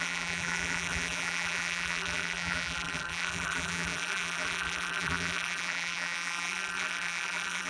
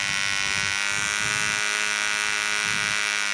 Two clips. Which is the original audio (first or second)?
second